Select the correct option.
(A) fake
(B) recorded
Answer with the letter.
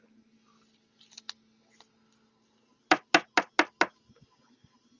B